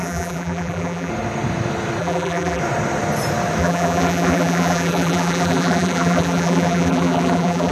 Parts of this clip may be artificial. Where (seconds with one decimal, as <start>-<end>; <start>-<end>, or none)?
0.0-1.1; 2.0-2.6; 3.6-7.7